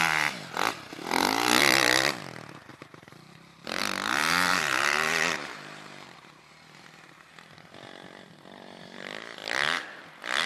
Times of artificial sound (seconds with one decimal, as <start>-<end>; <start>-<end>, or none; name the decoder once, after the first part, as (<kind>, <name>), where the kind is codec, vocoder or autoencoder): 2.7-3.8 (vocoder, BigVGAN v2); 4.5-6.4